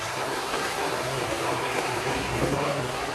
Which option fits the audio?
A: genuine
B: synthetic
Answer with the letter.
B